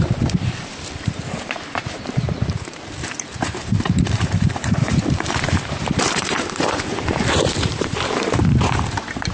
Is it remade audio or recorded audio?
remade